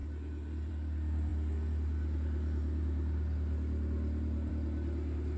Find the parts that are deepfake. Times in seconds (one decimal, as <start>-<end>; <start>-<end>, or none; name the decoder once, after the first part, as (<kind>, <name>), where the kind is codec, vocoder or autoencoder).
none

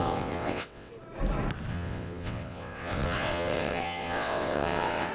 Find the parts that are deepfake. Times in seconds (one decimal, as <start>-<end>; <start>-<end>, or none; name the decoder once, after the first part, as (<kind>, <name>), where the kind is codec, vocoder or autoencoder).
0.0-0.9 (vocoder, WaveNeXt); 1.7-5.1

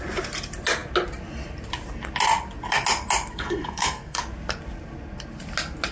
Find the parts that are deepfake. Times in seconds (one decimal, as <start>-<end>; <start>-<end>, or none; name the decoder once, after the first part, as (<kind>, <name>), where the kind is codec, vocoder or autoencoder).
3.3-4.2 (codec, SNAC)

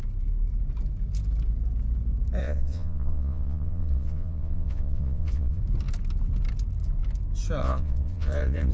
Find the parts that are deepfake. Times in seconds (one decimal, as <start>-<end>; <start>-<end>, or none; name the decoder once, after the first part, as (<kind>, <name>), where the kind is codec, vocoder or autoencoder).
2.4-5.6 (vocoder, Vocos); 7.6-8.7